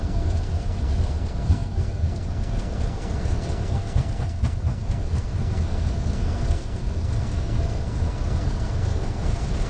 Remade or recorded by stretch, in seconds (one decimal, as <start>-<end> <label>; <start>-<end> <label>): 0.0-9.7 remade